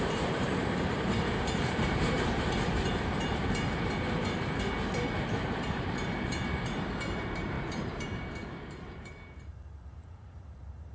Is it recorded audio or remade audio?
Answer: remade